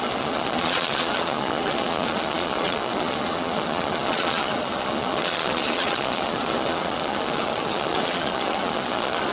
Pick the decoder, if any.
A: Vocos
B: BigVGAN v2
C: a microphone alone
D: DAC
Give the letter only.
A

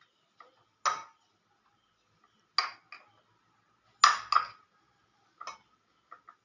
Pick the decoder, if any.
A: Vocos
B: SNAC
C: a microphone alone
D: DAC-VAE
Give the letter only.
C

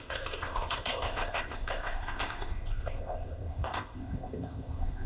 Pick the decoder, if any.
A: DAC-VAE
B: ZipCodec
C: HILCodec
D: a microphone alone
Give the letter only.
B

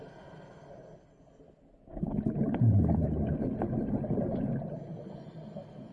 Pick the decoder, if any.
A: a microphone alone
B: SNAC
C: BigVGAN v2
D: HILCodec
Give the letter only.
A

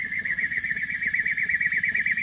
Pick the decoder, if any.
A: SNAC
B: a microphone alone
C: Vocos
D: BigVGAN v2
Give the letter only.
D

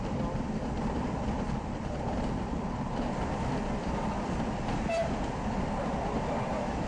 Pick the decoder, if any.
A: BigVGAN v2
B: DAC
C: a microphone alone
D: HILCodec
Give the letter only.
A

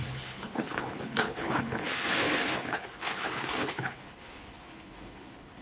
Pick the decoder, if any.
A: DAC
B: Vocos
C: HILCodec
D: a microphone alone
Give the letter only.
C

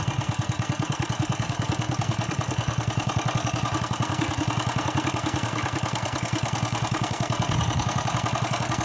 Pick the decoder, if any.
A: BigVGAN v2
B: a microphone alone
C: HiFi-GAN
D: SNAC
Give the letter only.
D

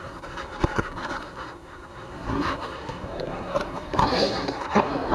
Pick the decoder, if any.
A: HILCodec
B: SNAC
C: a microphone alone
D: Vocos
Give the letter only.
B